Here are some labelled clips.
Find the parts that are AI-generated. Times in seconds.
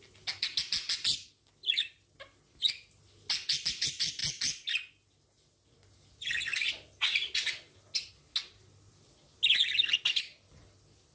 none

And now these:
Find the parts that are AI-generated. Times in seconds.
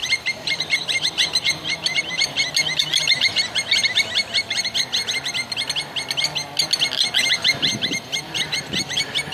0.0-2.5 (vocoder, BigVGAN v2); 7.7-9.3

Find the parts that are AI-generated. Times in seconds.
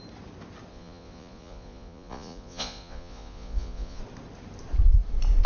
0.7-4.0 (vocoder, Vocos)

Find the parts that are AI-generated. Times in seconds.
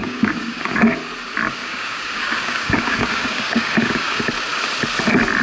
0.0-0.6 (codec, DAC); 1.6-4.2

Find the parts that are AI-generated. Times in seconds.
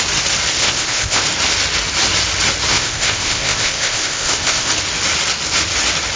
0.6-1.2 (codec, ZipCodec); 2.7-4.7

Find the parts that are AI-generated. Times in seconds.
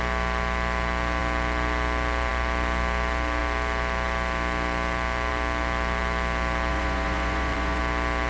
6.7-7.8 (vocoder, Vocos)